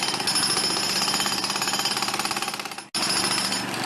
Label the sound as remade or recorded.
recorded